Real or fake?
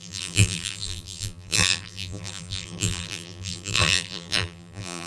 fake